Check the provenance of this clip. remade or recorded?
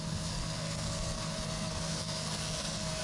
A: remade